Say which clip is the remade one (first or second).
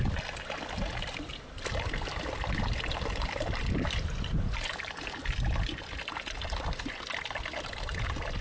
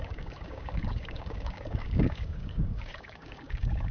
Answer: second